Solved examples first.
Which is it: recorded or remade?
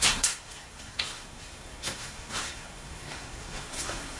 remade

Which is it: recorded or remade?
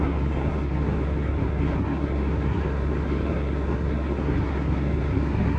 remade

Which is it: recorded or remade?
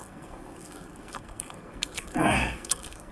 remade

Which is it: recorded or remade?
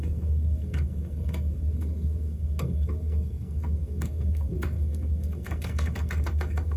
remade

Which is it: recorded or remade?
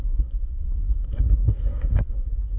remade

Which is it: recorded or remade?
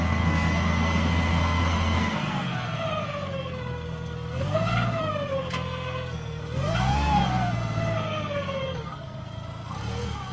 remade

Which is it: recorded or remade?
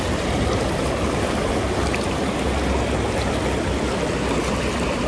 recorded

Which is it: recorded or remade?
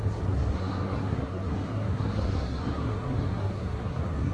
remade